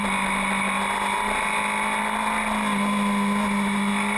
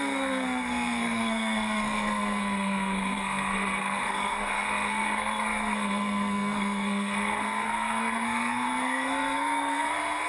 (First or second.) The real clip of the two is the first